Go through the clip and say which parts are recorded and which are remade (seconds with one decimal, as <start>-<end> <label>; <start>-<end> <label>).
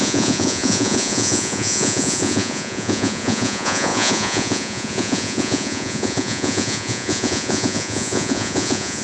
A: 0.0-9.0 remade